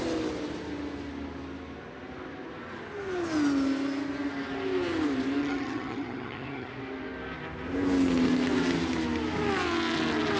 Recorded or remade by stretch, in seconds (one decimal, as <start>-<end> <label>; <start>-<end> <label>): 0.0-5.4 recorded; 5.4-6.7 remade; 6.7-10.4 recorded